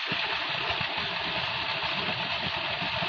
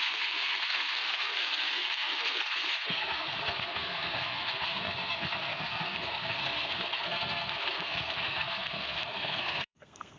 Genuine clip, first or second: first